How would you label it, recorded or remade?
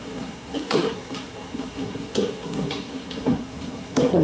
remade